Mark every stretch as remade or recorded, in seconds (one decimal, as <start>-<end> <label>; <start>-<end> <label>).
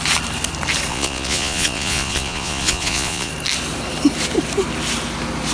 0.0-0.9 recorded; 0.9-3.3 remade; 3.3-5.5 recorded